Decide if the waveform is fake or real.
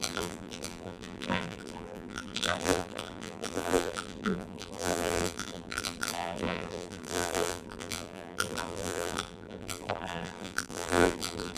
fake